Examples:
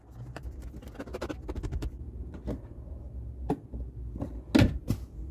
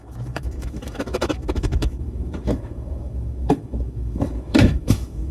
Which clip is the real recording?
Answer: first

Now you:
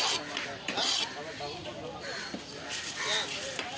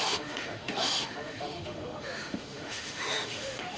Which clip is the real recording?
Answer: first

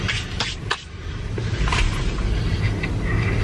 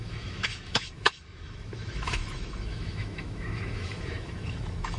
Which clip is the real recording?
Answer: first